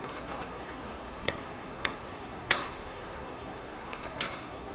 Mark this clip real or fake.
fake